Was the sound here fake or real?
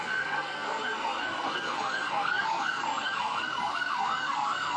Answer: fake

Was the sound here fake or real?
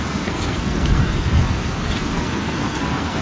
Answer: fake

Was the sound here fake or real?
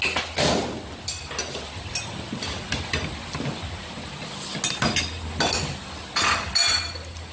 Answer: real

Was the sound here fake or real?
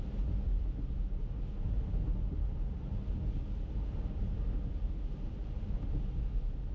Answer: real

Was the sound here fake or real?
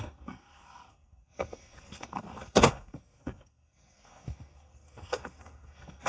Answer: fake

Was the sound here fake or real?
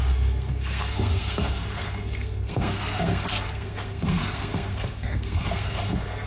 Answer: fake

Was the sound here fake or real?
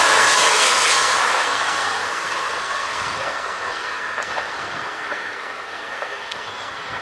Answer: fake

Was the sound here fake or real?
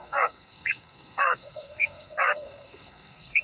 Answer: fake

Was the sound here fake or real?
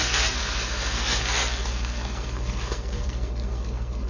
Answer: fake